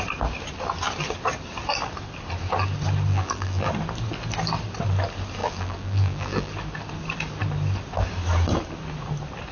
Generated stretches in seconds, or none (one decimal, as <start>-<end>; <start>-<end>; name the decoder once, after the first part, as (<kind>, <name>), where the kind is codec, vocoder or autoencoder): 3.1-3.7 (vocoder, BigVGAN v2); 5.4-6.5